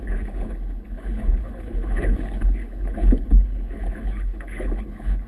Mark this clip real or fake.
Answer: fake